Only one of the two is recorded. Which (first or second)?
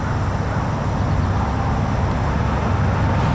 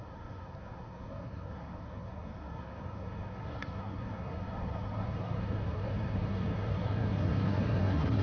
first